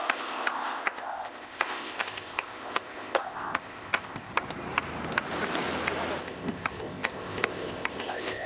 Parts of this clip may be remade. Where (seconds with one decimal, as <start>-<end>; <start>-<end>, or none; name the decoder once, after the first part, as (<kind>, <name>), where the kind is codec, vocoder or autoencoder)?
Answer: 0.0-4.3 (codec, ZipCodec); 6.2-8.5

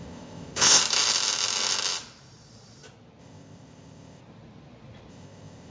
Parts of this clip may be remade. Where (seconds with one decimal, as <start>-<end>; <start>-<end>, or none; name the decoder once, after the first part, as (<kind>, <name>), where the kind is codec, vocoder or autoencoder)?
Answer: 0.0-0.8 (codec, ZipCodec); 3.2-4.2; 5.1-5.7

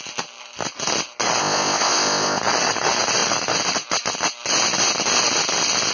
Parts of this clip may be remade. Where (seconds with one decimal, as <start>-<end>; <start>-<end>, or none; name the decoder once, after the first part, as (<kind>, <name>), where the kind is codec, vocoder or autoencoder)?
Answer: 1.4-2.4 (codec, ZipCodec)

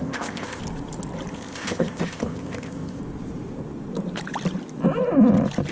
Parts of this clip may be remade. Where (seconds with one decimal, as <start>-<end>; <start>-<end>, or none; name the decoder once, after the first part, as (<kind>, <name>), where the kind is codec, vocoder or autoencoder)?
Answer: 0.0-0.6 (codec, ZipCodec); 1.3-3.0

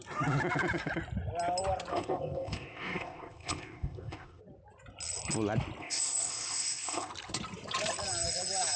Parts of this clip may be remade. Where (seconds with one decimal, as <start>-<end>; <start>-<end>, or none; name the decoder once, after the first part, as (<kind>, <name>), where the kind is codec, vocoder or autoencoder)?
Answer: 1.9-4.4 (codec, ZipCodec); 5.8-7.1